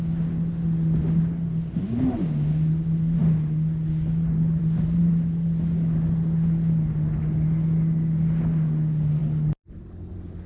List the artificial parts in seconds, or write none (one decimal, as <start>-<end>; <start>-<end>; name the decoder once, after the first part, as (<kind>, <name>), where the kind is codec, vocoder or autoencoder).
none